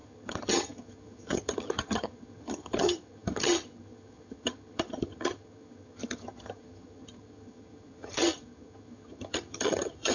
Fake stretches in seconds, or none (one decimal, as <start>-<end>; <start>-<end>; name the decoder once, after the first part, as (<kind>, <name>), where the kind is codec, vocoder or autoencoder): 0.0-10.1 (vocoder, HiFi-GAN)